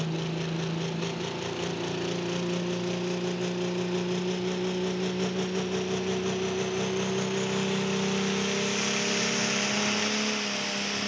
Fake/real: real